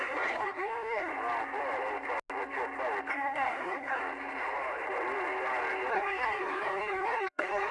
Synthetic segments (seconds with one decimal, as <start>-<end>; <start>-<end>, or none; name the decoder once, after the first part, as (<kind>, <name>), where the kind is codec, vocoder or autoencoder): 0.0-1.1 (codec, SNAC); 3.1-4.0; 5.9-7.7